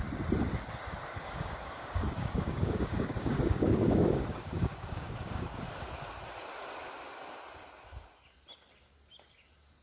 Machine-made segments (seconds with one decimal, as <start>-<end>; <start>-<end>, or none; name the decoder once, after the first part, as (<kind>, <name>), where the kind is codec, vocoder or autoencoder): 1.1-5.6 (codec, DAC)